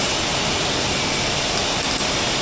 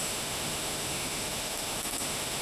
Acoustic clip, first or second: first